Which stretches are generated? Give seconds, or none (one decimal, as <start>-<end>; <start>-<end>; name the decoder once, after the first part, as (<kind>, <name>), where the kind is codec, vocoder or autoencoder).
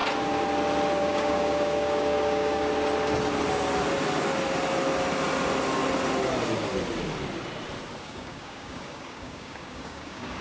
1.0-2.7 (codec, DAC); 8.0-10.4